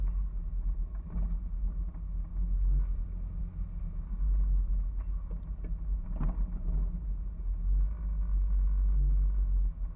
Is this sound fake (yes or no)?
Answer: no